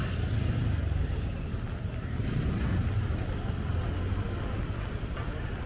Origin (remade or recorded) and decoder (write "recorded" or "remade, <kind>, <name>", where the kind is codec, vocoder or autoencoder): recorded